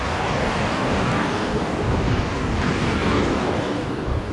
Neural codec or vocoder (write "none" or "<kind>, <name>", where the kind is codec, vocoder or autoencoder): codec, DAC